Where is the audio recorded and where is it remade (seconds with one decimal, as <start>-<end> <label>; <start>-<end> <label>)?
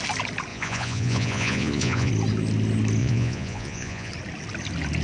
0.0-0.5 recorded; 0.5-2.1 remade; 2.1-3.0 recorded; 3.0-4.1 remade; 4.1-5.0 recorded